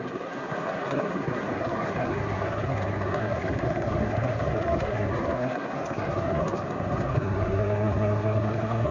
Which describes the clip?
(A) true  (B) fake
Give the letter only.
B